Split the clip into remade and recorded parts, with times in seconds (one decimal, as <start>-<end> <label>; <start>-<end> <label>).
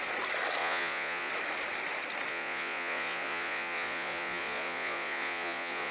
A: 0.0-0.6 recorded; 0.6-1.3 remade; 1.3-2.3 recorded; 2.3-5.9 remade